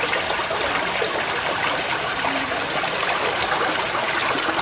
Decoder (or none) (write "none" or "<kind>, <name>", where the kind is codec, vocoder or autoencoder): none